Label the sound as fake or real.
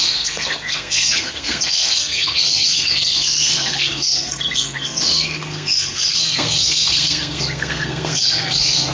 fake